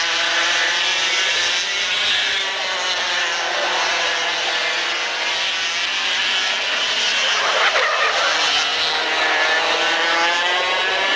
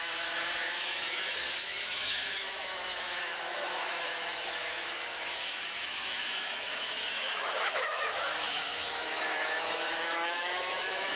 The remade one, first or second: second